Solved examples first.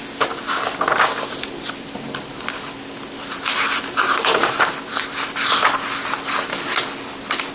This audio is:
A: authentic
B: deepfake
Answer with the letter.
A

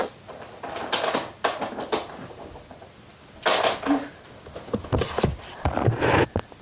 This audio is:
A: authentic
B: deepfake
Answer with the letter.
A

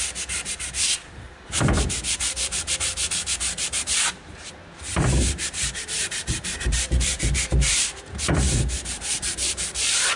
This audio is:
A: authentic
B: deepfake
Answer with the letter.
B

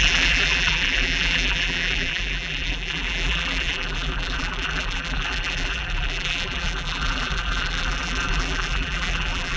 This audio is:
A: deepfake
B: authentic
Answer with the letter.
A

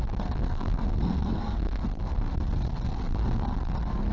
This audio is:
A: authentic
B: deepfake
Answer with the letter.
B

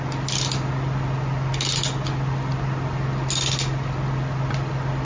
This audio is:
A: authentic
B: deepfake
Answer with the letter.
A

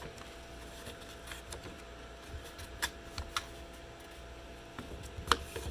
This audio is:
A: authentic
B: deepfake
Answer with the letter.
A